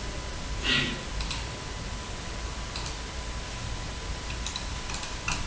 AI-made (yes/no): no